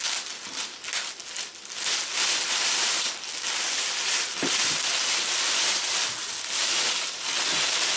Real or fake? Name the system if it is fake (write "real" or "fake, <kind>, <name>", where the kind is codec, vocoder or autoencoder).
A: real